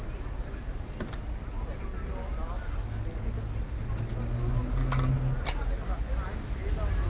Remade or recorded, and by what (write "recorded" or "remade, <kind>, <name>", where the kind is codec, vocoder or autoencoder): recorded